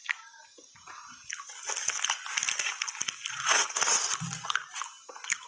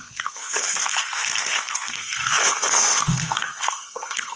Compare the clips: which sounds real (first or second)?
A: first